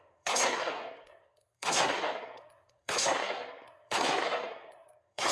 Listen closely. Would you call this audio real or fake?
fake